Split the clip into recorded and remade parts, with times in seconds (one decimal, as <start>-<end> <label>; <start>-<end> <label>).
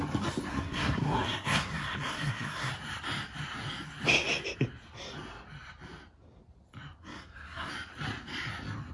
0.0-0.5 recorded; 0.5-2.7 remade; 2.7-7.0 recorded; 7.0-7.7 remade; 7.7-8.9 recorded